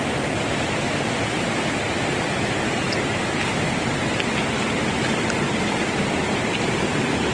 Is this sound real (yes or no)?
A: yes